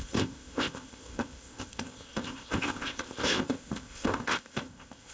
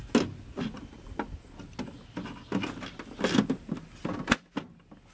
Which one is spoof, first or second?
first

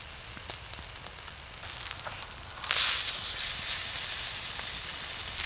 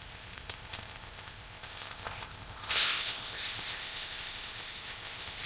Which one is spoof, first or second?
second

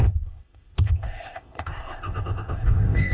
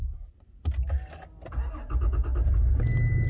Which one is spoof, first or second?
first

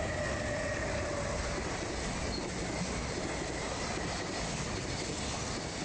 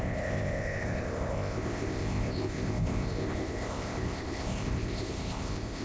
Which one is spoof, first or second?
second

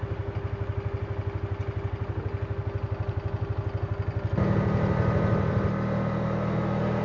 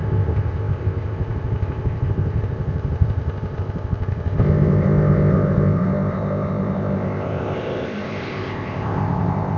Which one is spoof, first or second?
second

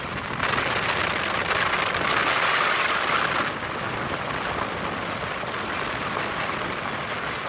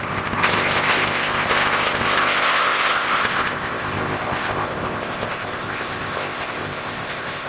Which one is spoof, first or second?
second